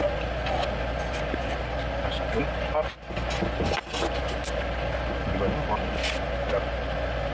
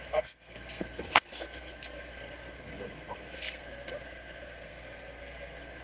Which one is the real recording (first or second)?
first